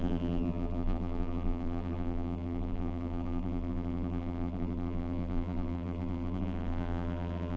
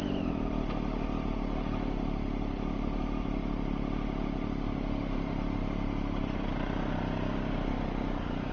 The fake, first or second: first